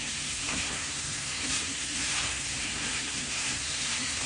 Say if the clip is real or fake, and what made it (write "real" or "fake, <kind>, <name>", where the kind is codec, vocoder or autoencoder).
fake, codec, SNAC